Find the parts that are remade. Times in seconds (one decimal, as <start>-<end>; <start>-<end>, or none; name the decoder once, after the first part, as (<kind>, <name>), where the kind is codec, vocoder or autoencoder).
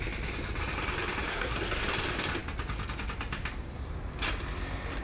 1.3-1.8 (codec, SNAC)